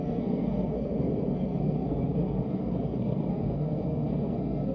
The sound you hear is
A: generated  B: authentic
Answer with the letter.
A